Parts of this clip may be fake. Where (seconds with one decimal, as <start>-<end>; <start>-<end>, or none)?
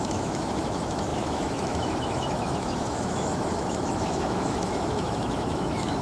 0.0-6.0